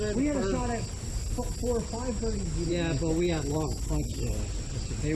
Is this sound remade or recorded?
recorded